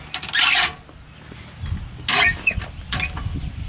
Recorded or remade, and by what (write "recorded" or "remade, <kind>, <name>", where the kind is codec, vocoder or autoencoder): recorded